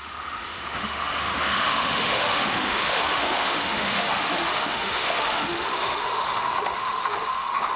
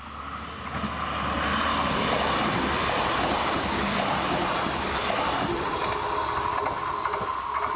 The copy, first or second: first